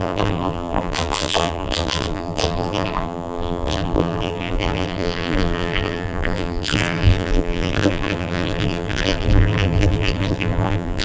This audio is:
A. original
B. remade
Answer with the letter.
B